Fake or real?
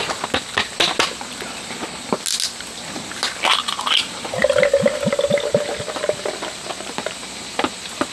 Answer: real